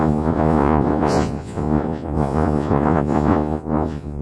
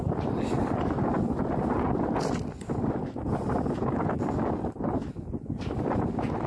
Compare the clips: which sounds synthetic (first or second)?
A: first